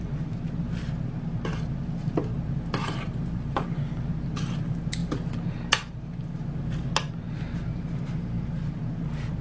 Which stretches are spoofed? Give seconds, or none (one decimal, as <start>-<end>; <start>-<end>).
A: none